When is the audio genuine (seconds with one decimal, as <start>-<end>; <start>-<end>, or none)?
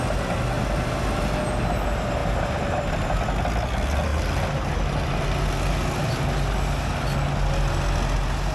0.0-8.5